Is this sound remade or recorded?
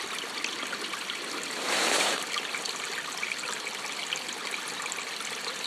recorded